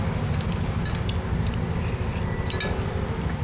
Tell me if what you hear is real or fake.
real